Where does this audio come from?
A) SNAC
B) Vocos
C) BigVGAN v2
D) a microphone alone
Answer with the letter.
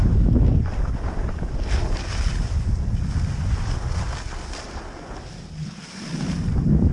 D